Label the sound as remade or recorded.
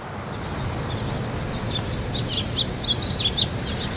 recorded